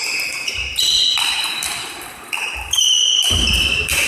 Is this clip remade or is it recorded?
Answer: remade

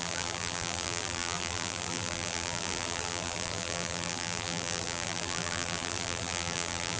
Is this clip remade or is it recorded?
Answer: remade